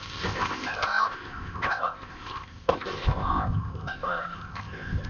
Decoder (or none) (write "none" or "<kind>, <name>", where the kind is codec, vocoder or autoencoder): codec, ZipCodec